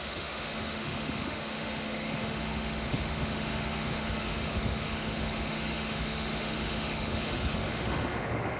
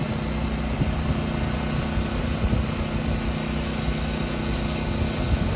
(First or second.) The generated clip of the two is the first